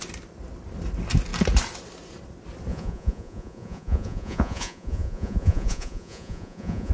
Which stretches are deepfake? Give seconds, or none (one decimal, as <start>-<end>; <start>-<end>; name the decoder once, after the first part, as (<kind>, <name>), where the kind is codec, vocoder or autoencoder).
2.7-6.9 (vocoder, Vocos)